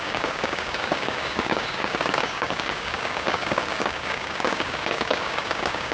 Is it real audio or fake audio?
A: fake